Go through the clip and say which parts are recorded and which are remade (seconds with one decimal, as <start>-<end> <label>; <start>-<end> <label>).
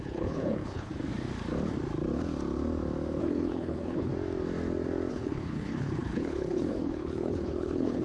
0.0-0.9 remade; 0.9-3.2 recorded; 3.2-4.1 remade; 4.1-5.1 recorded; 5.1-8.0 remade